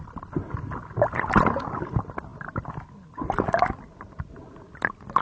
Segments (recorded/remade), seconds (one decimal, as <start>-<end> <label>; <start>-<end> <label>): 0.0-5.2 recorded

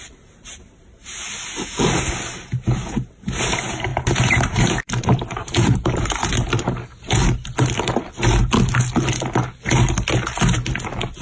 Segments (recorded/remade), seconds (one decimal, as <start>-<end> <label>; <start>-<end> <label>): 0.0-7.2 remade; 7.2-11.2 recorded

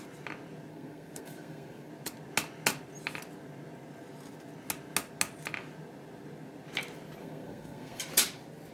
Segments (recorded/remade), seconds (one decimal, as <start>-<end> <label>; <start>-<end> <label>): 0.0-0.7 recorded; 0.7-1.9 remade; 1.9-7.2 recorded; 7.2-8.0 remade; 8.0-8.7 recorded

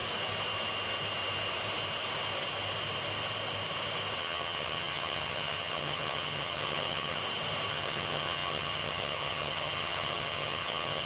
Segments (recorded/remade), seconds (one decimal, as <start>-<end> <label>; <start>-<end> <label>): 0.0-4.2 recorded; 4.2-7.2 remade; 7.2-7.7 recorded; 7.7-11.1 remade